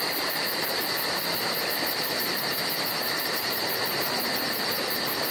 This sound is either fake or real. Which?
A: fake